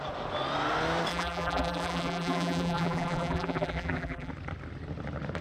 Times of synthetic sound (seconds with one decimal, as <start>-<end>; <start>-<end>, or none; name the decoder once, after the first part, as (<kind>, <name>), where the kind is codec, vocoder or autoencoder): 1.1-4.3 (vocoder, BigVGAN v2)

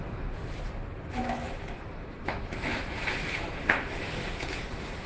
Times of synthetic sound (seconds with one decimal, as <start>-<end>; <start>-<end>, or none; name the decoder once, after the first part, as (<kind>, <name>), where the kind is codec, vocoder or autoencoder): 0.0-0.4 (autoencoder, DAC-VAE); 1.1-5.1

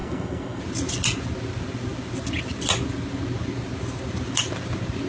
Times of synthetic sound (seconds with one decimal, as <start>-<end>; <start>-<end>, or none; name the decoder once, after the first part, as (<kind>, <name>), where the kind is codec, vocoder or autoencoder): 0.0-0.6 (codec, SNAC)

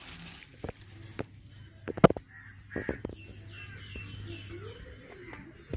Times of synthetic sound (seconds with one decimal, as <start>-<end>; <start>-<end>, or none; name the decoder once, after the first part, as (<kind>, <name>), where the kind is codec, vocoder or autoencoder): none